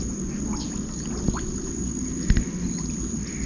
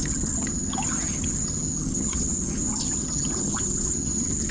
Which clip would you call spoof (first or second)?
second